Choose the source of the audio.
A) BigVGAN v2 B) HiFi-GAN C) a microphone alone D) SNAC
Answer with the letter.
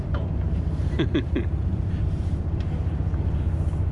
A